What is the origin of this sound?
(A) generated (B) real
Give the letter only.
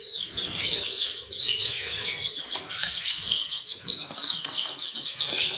A